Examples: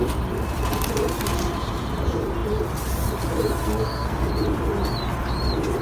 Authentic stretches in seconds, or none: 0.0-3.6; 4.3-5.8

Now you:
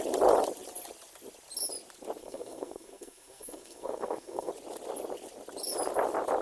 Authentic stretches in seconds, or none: 0.0-2.2; 4.5-6.4

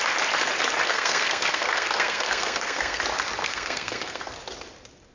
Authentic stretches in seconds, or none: 0.0-0.9; 3.0-3.4; 4.2-5.1

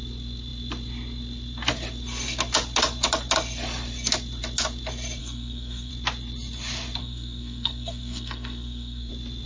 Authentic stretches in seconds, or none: 0.0-5.2; 5.9-7.0; 9.1-9.5

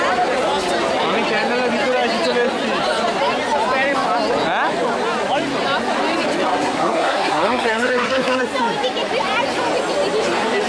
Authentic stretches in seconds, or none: 0.0-6.5; 8.4-10.7

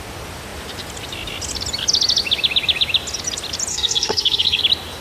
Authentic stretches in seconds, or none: 0.0-3.7; 4.6-5.0

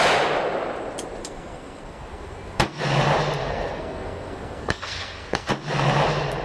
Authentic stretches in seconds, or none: 0.0-1.2; 2.8-3.4; 5.5-6.4

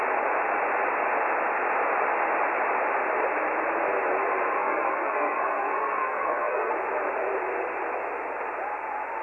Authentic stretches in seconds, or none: 0.0-4.6; 6.7-9.2